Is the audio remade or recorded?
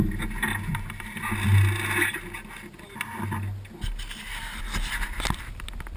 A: recorded